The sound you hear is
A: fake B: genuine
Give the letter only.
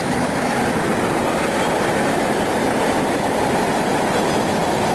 B